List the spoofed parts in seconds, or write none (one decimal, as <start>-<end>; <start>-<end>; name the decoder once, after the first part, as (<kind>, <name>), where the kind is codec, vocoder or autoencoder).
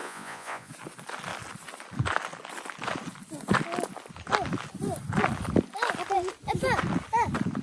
0.0-0.7 (vocoder, Vocos)